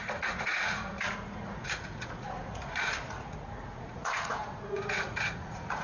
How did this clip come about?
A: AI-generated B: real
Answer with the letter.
A